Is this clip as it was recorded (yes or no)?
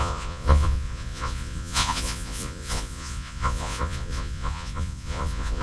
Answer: no